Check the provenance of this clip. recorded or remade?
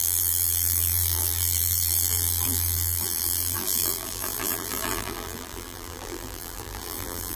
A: remade